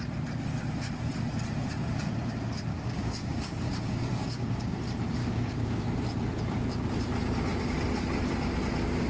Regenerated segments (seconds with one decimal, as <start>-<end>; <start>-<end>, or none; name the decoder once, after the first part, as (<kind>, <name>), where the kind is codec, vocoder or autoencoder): 2.7-4.8 (codec, DAC); 5.2-5.8